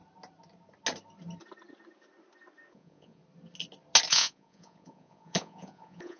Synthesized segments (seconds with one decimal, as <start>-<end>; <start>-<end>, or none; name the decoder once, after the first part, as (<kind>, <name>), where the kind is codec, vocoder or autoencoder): 2.7-3.2 (vocoder, Vocos); 4.1-6.2